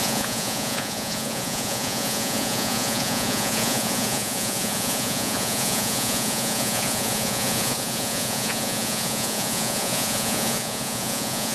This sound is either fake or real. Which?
fake